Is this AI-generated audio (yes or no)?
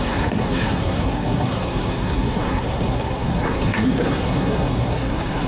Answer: yes